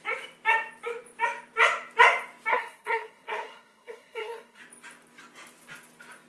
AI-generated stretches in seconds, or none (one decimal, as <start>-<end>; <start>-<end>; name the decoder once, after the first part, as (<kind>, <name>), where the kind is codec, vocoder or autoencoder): 2.5-4.6 (codec, SNAC)